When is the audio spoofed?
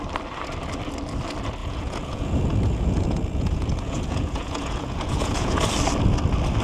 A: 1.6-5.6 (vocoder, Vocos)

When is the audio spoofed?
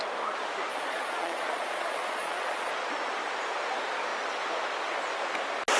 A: 0.7-2.7 (vocoder, Vocos)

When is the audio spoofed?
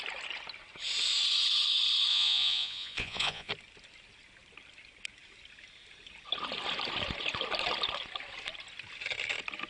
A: 2.1-3.5 (vocoder, Vocos)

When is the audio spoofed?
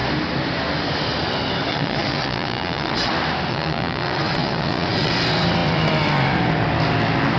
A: 1.7-3.1 (vocoder, Vocos); 3.5-5.1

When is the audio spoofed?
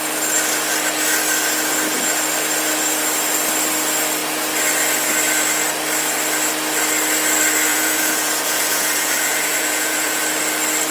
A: 7.7-10.2 (vocoder, Vocos)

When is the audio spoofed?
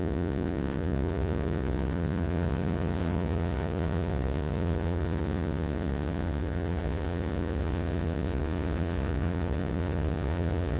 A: 0.0-10.8 (vocoder, Vocos)